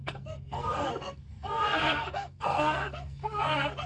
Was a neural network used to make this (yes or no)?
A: yes